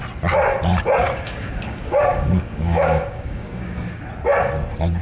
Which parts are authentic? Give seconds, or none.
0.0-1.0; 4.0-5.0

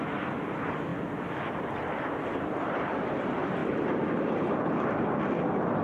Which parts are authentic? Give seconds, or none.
0.0-3.6; 5.2-5.8